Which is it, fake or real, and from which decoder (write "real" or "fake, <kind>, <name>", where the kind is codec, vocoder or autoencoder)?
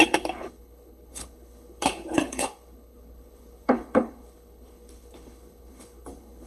fake, codec, HILCodec